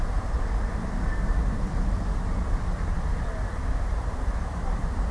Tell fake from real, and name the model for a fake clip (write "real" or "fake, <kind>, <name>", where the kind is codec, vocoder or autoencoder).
real